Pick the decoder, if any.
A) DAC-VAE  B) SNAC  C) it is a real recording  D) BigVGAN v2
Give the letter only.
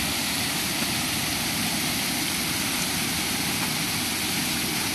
C